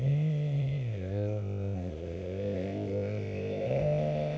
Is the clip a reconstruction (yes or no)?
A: yes